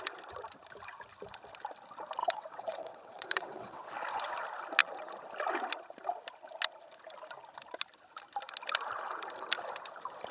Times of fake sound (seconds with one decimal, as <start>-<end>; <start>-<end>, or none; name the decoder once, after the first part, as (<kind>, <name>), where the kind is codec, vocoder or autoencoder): 2.2-3.9 (vocoder, WaveNeXt)